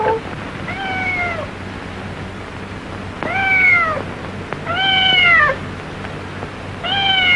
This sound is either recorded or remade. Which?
recorded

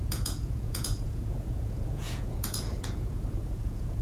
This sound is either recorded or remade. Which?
remade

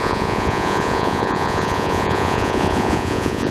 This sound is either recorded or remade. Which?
remade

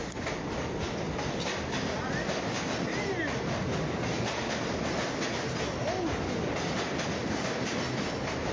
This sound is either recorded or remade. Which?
recorded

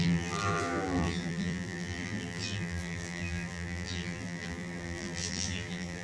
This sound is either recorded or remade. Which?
remade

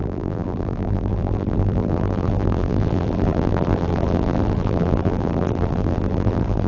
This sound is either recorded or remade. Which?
remade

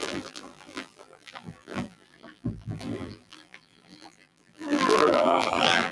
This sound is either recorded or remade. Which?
remade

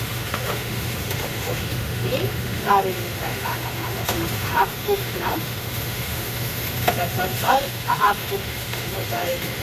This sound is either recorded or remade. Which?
remade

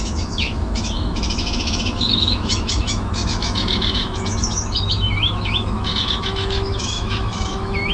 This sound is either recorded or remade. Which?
remade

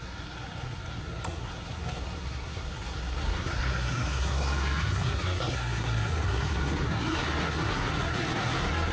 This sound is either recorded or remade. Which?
remade